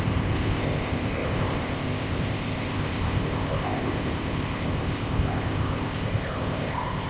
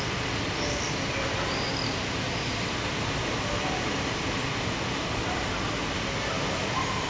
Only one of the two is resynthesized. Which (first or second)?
first